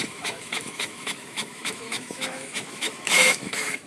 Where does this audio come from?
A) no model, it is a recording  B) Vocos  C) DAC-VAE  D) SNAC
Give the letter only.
C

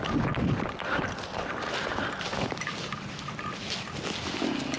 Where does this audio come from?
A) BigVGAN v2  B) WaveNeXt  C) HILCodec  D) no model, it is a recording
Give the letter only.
D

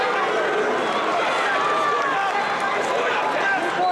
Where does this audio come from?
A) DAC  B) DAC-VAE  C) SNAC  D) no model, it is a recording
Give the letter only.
D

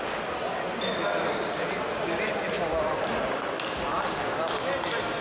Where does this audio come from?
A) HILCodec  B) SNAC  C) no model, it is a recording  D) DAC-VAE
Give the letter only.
C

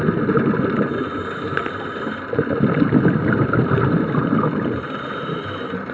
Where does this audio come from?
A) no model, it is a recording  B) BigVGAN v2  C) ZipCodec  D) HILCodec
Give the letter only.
A